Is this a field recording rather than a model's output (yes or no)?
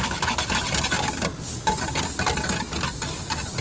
yes